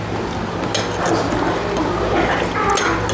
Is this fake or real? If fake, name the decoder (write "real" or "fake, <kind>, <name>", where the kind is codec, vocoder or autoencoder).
real